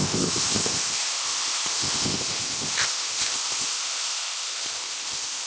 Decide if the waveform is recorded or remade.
remade